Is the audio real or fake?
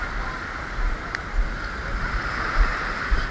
real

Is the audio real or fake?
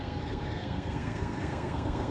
fake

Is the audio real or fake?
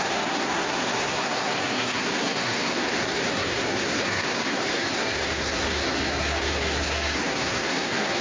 fake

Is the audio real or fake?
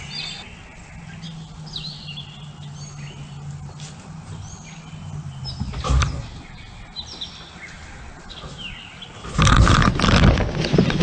real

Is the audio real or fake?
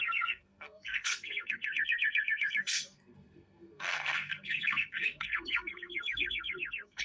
fake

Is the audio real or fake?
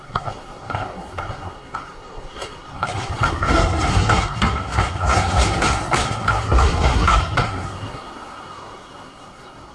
fake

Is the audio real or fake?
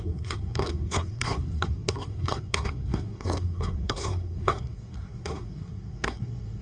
fake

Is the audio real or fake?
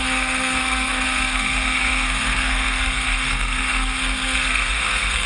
fake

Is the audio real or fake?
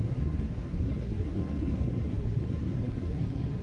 fake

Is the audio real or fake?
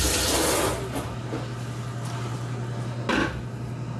real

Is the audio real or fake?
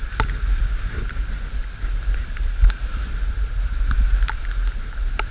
real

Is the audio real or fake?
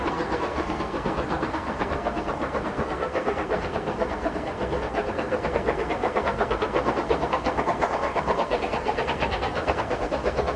fake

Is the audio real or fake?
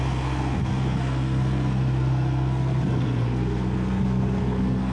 fake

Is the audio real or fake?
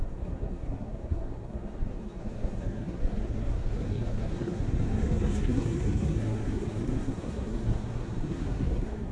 fake